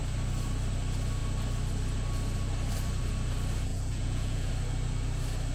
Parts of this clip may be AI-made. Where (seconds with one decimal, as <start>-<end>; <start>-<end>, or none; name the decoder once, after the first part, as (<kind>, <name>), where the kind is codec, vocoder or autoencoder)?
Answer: 3.7-4.5 (vocoder, Vocos)